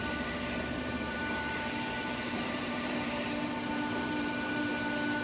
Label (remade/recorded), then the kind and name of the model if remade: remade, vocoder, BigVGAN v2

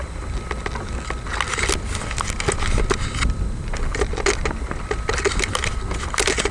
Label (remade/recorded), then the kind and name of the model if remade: recorded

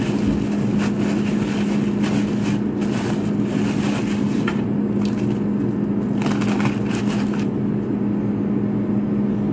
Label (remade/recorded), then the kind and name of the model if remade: recorded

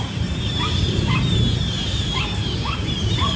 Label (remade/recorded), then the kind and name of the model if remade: remade, vocoder, BigVGAN v2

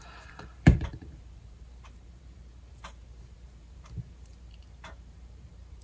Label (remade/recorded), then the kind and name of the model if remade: remade, vocoder, BigVGAN v2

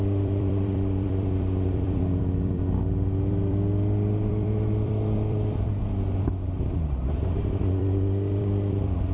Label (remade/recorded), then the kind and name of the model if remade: remade, vocoder, BigVGAN v2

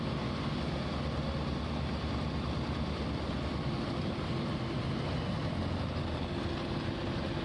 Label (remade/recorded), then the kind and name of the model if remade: recorded